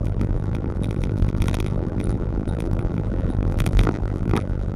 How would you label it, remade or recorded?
remade